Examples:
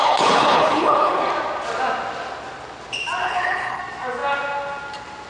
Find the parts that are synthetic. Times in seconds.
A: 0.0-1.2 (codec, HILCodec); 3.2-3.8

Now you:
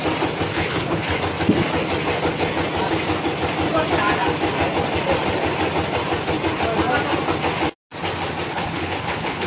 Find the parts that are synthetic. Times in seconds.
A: 0.5-1.2 (codec, HILCodec); 8.5-9.5

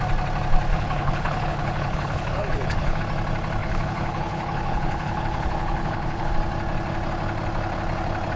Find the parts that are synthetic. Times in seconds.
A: 0.7-3.0 (codec, HILCodec); 3.6-6.3

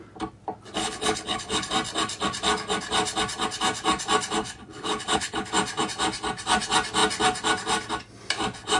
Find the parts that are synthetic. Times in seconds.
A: 0.8-1.7 (codec, HILCodec); 4.4-5.5

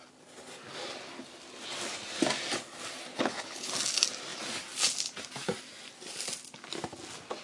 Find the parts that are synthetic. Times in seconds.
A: 3.1-3.7 (codec, HILCodec)

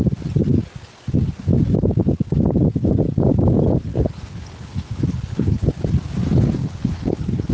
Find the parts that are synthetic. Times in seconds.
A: 3.9-5.6 (codec, HILCodec); 6.6-7.5

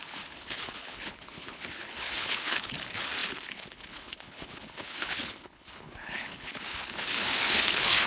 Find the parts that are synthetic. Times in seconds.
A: 0.0-8.1 (codec, HILCodec)

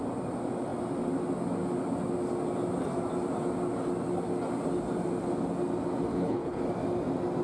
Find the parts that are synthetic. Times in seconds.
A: 6.1-6.6 (codec, HILCodec)